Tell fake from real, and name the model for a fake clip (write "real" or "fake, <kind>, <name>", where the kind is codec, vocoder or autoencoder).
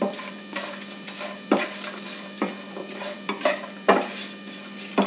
fake, vocoder, BigVGAN v2